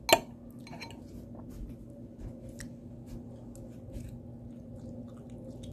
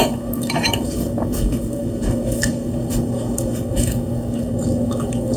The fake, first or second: second